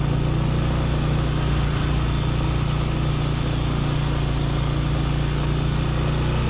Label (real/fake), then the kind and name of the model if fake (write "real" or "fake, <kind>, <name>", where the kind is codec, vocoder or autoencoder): real